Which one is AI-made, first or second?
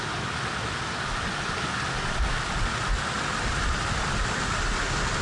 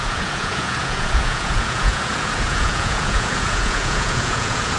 second